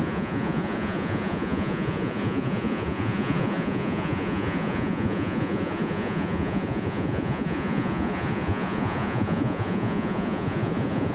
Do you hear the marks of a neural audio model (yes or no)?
yes